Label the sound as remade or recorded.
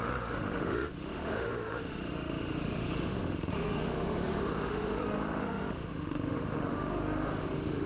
remade